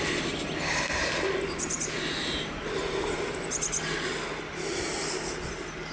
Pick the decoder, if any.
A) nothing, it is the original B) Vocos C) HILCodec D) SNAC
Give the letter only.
A